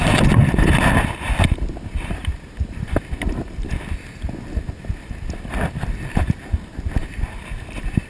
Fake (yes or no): no